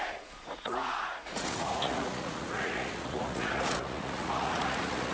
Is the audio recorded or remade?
remade